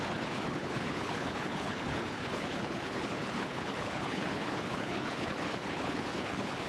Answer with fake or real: fake